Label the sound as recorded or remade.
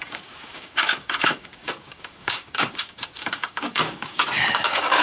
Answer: remade